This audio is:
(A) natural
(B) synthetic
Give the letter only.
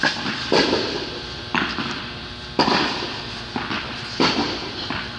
B